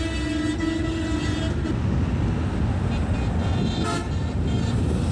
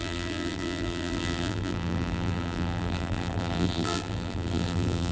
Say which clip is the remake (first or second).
second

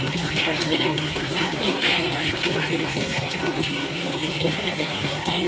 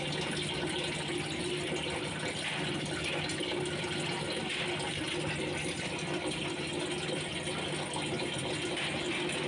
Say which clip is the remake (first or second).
first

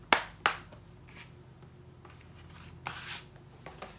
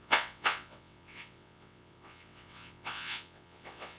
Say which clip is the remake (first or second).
second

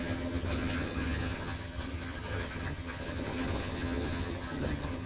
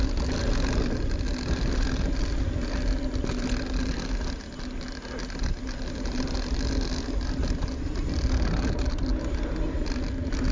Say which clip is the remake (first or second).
first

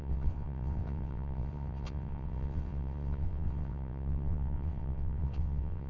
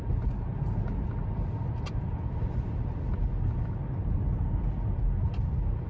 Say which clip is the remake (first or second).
first